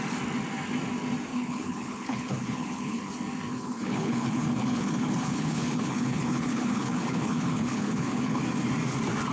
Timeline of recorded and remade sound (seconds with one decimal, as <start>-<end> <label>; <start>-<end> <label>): 0.0-1.3 recorded; 1.3-3.1 remade; 3.1-3.5 recorded; 3.5-8.4 remade; 8.4-9.3 recorded